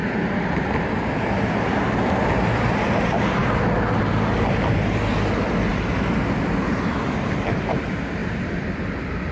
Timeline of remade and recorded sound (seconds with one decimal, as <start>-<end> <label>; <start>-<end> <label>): 0.0-1.2 remade; 1.2-5.7 recorded; 5.7-7.0 remade; 7.0-8.2 recorded; 8.2-9.3 remade

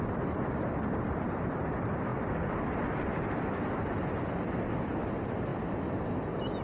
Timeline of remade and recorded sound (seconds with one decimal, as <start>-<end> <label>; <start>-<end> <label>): 0.0-5.5 remade; 5.5-6.6 recorded

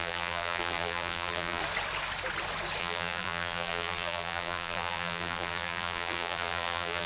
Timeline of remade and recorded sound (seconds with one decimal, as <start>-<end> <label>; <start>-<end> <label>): 0.0-1.6 remade; 1.6-2.8 recorded; 2.8-7.1 remade

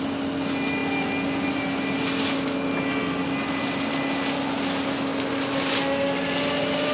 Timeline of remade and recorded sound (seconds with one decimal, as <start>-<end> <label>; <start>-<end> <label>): 0.0-6.9 recorded

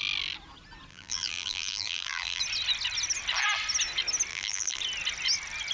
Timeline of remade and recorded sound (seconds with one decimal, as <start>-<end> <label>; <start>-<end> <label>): 0.0-0.9 recorded; 0.9-2.4 remade; 2.4-4.3 recorded; 4.3-4.8 remade; 4.8-5.7 recorded

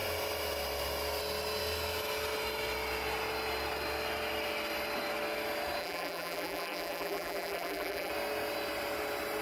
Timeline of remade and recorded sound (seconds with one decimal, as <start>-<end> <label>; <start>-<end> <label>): 0.0-5.8 recorded; 5.8-8.1 remade; 8.1-9.4 recorded

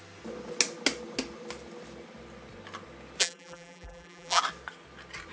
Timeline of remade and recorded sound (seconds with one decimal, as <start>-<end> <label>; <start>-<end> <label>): 0.0-3.2 recorded; 3.2-4.4 remade; 4.4-5.3 recorded

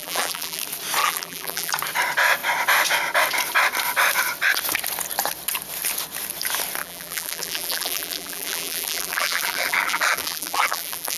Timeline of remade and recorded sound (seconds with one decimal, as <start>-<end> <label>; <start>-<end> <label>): 0.0-0.6 remade; 0.6-1.0 recorded; 1.0-1.7 remade; 1.7-6.8 recorded; 6.8-11.2 remade